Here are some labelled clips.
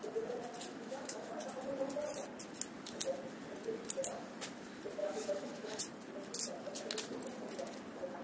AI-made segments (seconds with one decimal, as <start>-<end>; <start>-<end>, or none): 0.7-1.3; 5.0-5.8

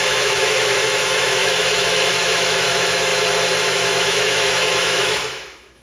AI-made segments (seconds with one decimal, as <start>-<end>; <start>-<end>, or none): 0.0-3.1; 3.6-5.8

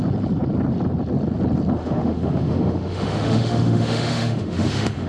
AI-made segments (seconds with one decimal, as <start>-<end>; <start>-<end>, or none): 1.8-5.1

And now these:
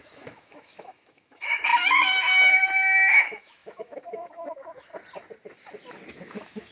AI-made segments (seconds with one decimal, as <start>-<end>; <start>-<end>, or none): 0.0-4.9; 6.1-6.7